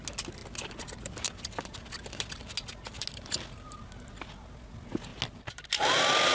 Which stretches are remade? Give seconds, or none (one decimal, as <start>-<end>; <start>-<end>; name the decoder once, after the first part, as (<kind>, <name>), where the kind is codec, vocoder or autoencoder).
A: none